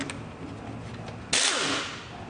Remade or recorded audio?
recorded